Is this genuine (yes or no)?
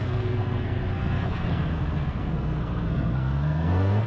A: no